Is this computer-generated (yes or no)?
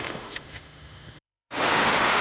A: yes